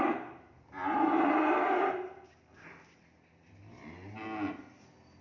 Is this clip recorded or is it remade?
recorded